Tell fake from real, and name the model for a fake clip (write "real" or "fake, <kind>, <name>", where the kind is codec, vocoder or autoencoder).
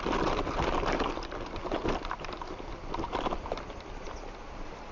real